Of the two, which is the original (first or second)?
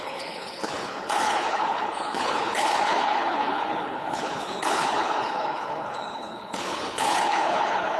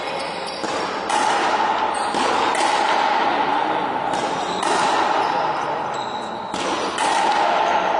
second